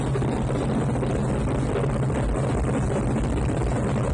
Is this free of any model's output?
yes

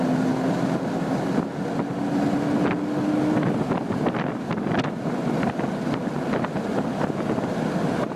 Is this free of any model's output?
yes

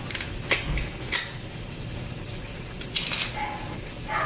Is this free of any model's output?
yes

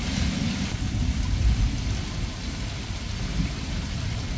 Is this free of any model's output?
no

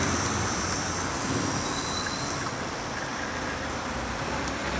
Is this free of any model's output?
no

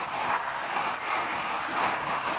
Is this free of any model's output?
yes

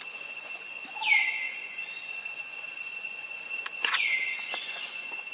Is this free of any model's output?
no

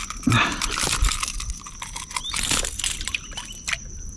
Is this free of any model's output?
yes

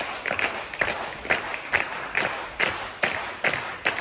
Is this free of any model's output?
yes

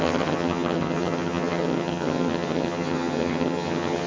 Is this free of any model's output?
no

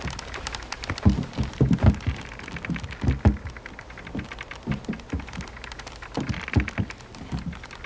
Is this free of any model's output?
yes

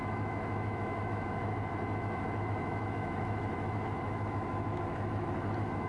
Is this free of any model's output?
no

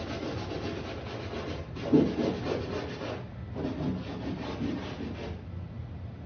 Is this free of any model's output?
yes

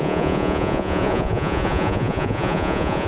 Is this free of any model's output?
no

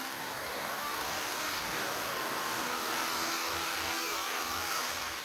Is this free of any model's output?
no